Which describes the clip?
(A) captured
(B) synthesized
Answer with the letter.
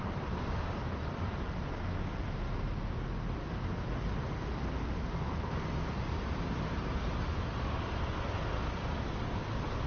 A